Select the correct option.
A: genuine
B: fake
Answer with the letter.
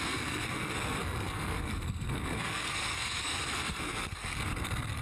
B